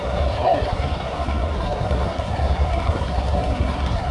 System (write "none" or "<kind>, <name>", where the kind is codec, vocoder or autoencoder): codec, SNAC